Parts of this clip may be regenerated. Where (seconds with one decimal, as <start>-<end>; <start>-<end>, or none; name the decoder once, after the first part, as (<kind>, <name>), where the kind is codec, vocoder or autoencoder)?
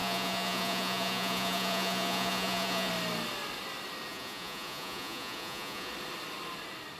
0.0-2.9 (vocoder, Vocos); 4.1-5.9